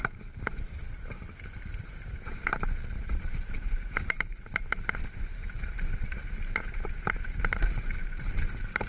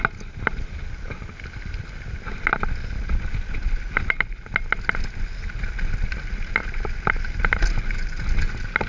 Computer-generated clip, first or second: first